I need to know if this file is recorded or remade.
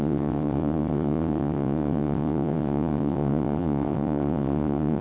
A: remade